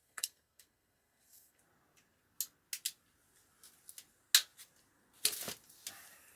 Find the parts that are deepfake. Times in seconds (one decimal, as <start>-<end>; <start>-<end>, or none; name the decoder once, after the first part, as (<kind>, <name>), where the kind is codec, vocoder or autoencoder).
0.0-1.6 (codec, SNAC)